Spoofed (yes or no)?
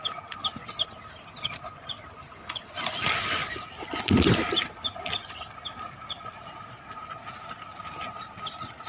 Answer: no